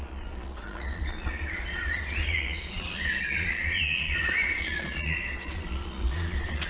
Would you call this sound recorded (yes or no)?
no